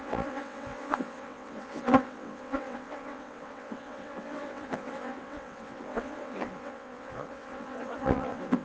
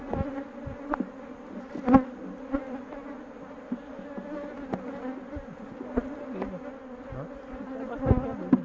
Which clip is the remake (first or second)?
first